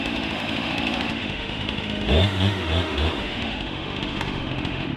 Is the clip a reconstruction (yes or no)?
yes